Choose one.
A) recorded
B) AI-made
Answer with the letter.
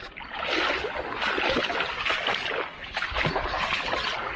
A